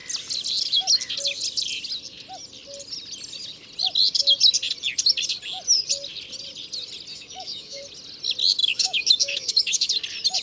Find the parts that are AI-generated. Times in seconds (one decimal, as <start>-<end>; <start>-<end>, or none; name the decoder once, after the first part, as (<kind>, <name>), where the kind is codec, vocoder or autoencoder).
7.1-7.8 (autoencoder, DAC-VAE); 8.6-9.9